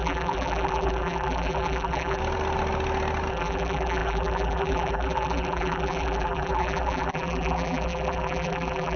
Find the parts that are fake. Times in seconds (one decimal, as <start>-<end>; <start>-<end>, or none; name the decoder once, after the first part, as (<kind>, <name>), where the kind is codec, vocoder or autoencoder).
0.0-2.2 (vocoder, BigVGAN v2); 3.3-9.0